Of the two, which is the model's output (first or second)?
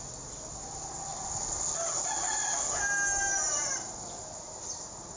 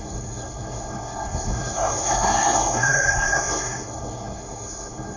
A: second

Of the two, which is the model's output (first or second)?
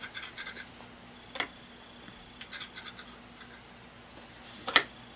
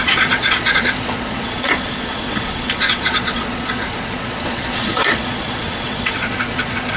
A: second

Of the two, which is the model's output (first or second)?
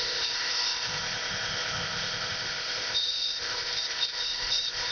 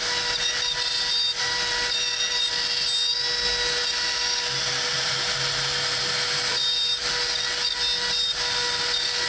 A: first